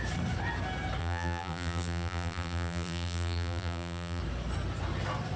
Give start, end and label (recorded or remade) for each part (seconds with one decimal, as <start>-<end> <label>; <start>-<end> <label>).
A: 0.0-1.0 recorded; 1.0-4.2 remade; 4.2-5.4 recorded